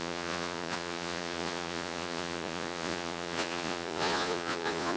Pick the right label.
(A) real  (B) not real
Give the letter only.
B